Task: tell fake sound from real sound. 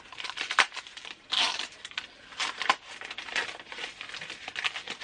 real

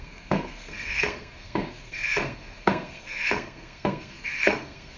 fake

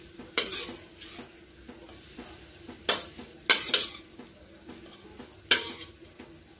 real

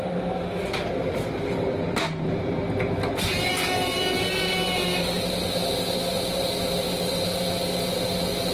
real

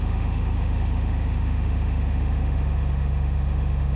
fake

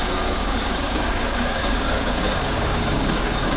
fake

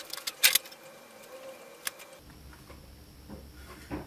real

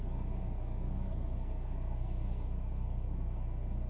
fake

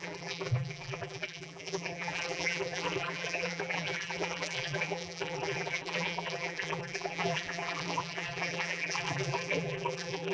fake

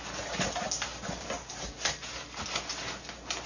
real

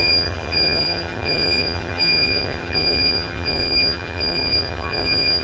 fake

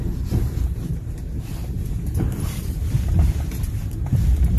fake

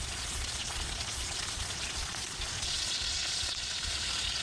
fake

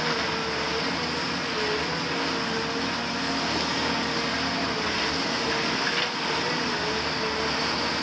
real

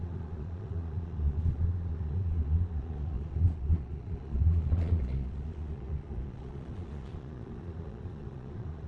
fake